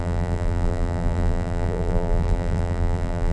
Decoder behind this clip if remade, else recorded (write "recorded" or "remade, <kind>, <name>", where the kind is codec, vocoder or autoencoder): remade, vocoder, BigVGAN v2